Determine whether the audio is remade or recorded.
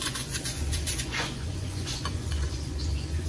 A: remade